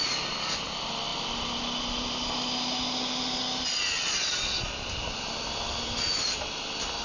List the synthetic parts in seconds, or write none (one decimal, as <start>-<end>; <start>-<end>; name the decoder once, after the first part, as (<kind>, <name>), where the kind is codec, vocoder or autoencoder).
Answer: none